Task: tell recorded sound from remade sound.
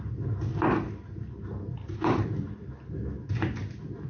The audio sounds recorded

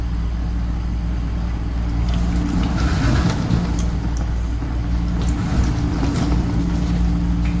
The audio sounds recorded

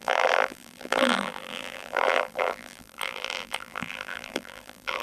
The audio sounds remade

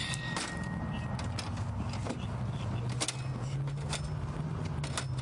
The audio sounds recorded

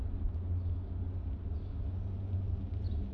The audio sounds recorded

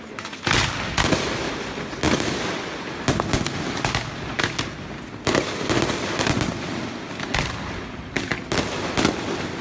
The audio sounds recorded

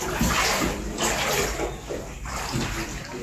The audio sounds recorded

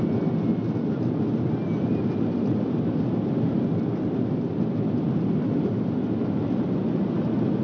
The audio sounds recorded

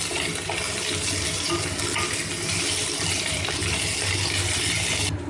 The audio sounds recorded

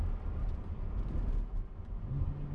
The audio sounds recorded